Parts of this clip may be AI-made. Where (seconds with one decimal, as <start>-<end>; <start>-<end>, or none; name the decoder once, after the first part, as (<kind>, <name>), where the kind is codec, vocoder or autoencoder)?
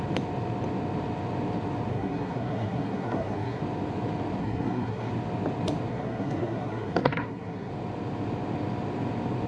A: 1.9-3.6 (codec, SNAC); 4.4-5.1; 5.9-7.7